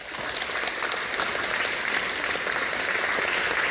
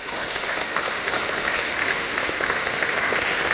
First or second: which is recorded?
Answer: first